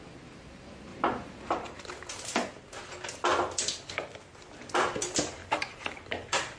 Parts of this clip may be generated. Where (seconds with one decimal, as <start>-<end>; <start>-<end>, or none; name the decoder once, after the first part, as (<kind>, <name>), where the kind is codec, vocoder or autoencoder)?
0.9-1.9 (vocoder, BigVGAN v2); 5.4-6.6